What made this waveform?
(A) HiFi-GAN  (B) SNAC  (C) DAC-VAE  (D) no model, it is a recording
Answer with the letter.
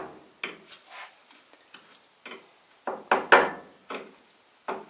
D